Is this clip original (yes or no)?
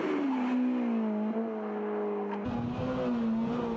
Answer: yes